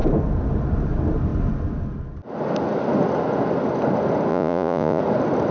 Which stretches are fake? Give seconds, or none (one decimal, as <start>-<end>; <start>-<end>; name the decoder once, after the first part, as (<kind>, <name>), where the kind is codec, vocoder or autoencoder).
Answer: 4.3-5.0 (vocoder, Vocos)